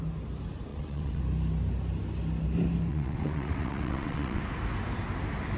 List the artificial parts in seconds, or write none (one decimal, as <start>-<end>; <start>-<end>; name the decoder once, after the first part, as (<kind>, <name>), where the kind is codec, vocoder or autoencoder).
0.7-1.2 (vocoder, WaveNeXt); 2.9-4.4